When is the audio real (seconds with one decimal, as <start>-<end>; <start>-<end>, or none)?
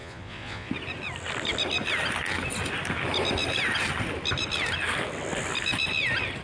0.7-6.4